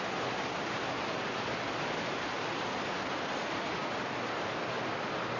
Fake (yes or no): no